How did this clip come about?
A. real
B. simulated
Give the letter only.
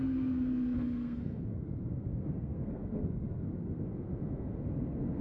B